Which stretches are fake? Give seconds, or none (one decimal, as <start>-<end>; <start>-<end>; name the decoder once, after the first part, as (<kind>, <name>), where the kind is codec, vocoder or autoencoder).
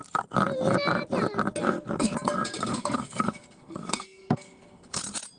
1.6-2.1 (codec, SNAC); 2.7-5.0